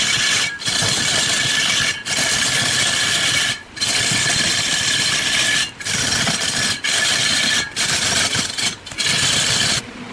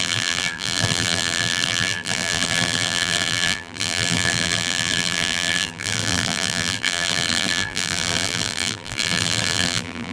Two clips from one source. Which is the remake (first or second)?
second